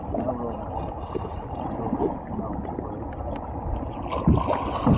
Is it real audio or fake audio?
real